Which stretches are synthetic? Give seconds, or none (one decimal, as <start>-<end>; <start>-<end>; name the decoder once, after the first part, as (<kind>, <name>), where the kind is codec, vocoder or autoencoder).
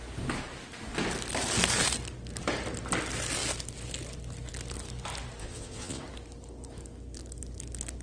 5.4-6.0 (vocoder, Vocos)